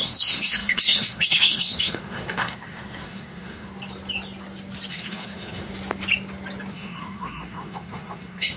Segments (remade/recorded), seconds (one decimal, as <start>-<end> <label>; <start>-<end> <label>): 0.0-3.7 remade; 3.7-4.9 recorded; 4.9-5.7 remade; 5.7-6.7 recorded; 6.7-8.6 remade

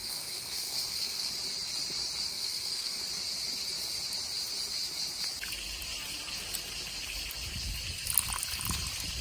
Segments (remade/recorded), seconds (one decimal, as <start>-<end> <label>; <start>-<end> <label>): 0.0-1.3 remade; 1.3-2.3 recorded; 2.3-3.0 remade; 3.0-9.2 recorded